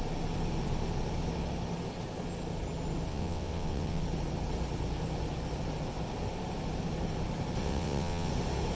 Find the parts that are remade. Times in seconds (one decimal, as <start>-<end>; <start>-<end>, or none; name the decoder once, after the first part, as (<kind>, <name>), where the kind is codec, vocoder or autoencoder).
3.1-4.0 (vocoder, WaveNeXt); 7.6-8.3